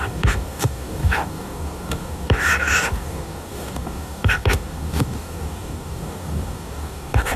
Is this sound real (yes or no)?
no